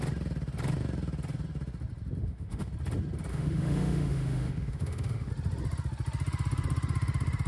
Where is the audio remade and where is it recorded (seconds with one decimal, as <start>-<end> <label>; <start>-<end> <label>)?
0.0-2.2 recorded; 2.2-2.7 remade; 2.7-3.3 recorded; 3.3-5.3 remade; 5.3-7.5 recorded